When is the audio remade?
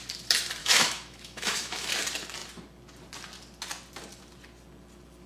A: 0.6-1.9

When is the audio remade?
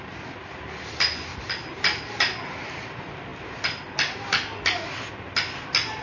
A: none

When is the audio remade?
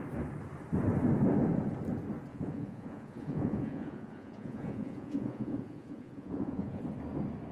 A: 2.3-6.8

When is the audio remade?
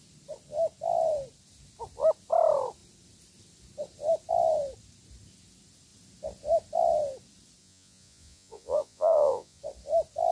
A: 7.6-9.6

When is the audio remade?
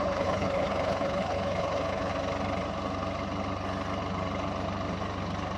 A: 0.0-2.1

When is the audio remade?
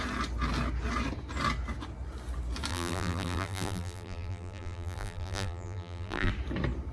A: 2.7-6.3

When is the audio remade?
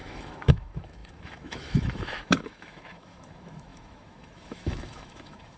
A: 0.0-5.6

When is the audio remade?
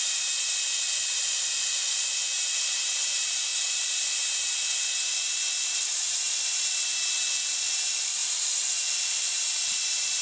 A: 0.0-6.9; 7.6-10.2